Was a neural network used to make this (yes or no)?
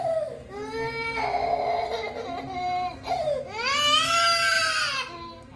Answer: no